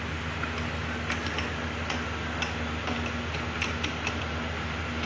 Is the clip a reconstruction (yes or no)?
no